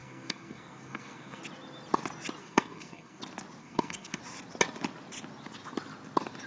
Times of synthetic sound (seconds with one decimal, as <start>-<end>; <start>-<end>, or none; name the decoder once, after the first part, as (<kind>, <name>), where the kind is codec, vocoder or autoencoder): 0.0-1.4 (codec, SNAC); 2.4-3.2; 3.6-4.2